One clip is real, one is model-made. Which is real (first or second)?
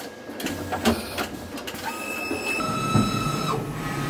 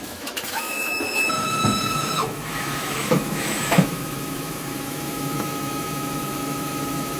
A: first